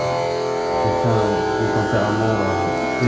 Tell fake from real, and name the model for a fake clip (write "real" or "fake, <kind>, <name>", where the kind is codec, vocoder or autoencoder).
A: real